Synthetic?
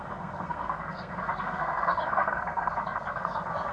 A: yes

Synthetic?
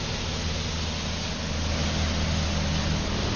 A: no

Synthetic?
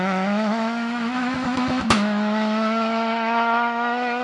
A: yes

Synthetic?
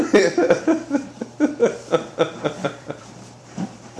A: yes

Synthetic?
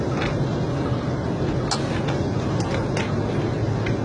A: no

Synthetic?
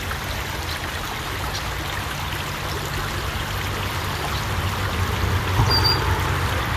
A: no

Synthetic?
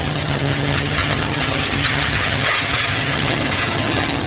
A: yes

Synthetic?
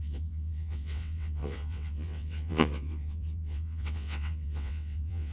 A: yes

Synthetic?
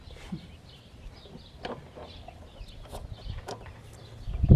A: no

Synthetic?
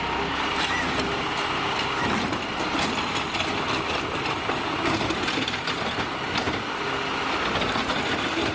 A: no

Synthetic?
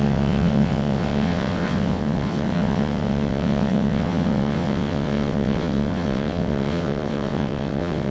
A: yes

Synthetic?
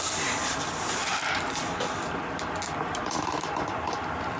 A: yes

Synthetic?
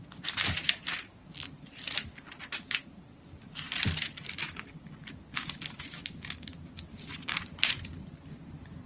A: no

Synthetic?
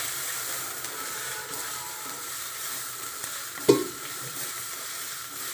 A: yes